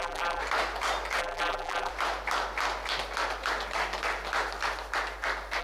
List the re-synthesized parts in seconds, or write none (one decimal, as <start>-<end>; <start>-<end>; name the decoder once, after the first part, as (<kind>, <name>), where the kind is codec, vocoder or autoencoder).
0.0-0.4 (vocoder, BigVGAN v2); 1.2-1.9